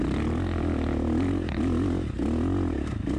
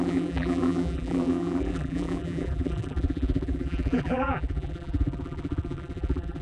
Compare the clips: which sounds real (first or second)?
first